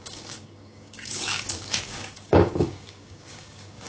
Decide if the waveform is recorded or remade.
remade